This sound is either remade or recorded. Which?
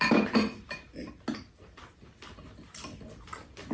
recorded